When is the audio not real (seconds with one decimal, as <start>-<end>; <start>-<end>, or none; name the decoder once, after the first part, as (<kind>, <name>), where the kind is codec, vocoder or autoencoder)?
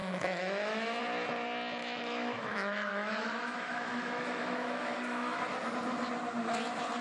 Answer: 0.0-1.0 (autoencoder, DAC-VAE); 1.8-5.4